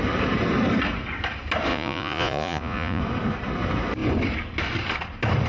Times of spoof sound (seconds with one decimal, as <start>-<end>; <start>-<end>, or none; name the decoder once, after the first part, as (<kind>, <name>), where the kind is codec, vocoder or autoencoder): 1.7-3.0 (vocoder, Vocos)